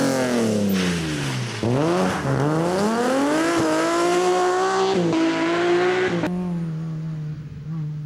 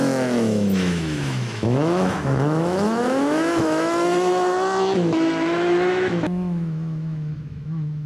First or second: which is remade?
second